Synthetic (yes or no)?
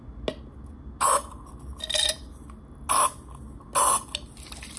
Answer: no